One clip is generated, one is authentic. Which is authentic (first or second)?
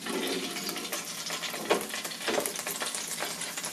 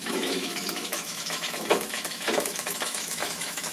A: first